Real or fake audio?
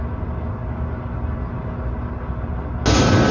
real